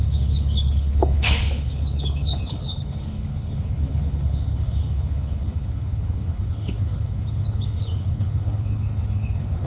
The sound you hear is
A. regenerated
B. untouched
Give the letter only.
A